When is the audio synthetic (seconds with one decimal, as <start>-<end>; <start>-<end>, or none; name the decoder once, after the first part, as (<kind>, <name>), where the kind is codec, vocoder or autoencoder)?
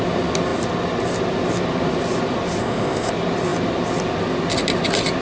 2.6-3.1 (codec, ZipCodec)